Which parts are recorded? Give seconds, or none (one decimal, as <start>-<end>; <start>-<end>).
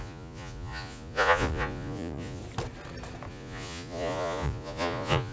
2.4-3.3